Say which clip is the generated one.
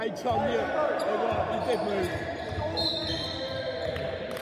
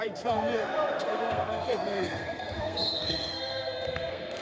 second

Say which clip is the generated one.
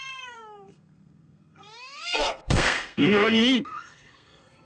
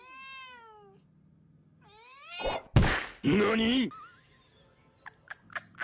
first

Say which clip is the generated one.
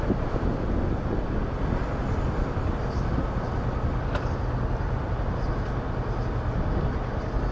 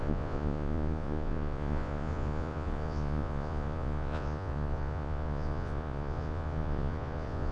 second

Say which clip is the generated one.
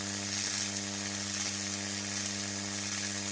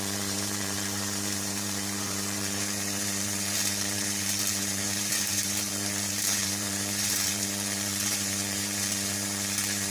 second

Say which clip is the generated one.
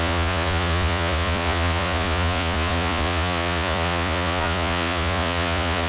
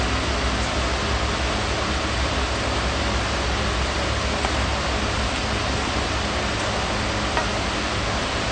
first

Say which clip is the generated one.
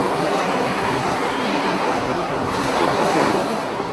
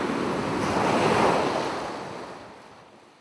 first